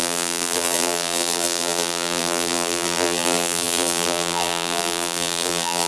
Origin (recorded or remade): remade